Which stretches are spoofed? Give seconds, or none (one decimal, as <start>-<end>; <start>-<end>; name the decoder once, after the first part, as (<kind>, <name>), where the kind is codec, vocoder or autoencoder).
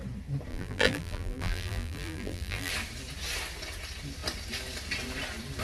0.5-2.7 (vocoder, BigVGAN v2)